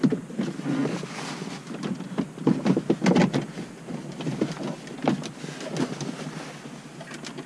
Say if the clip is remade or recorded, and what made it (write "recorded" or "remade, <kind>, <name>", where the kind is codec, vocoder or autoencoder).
recorded